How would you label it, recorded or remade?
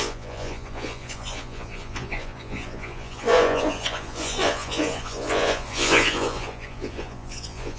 remade